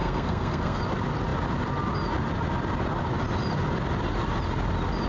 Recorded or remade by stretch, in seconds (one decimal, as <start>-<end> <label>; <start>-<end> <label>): 0.0-0.8 remade; 0.8-5.1 recorded